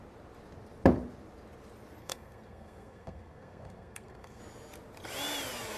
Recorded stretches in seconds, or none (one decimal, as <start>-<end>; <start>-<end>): 0.0-2.0; 4.4-5.8